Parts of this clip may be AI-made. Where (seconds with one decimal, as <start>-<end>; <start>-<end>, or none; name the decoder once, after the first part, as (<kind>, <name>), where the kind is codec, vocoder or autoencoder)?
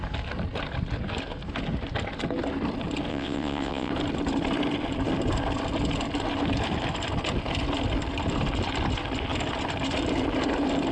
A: 3.1-3.9 (vocoder, WaveNeXt)